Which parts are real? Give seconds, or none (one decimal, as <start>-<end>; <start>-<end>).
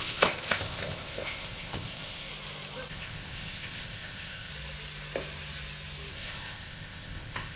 2.3-2.9; 4.5-6.1